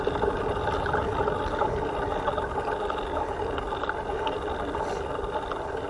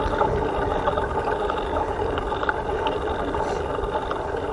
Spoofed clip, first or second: second